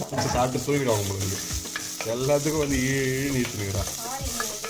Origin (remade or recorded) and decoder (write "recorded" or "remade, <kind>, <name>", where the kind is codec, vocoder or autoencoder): recorded